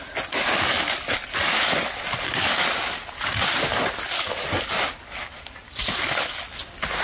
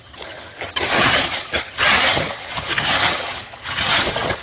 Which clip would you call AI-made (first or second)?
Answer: second